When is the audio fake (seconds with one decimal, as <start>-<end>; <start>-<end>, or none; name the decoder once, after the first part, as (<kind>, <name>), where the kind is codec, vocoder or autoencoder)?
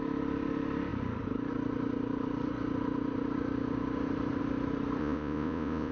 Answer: 5.0-5.9 (vocoder, Vocos)